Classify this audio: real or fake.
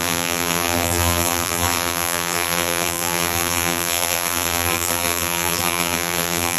fake